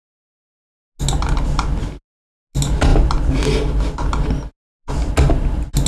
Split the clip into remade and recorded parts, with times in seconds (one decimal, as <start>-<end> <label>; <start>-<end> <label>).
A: 0.0-5.9 recorded